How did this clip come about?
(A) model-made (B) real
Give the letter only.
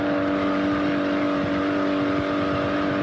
B